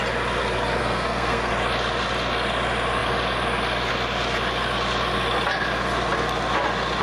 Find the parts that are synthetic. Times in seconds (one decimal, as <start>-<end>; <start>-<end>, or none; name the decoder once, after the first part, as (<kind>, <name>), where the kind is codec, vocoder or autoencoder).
0.8-1.5 (codec, SNAC)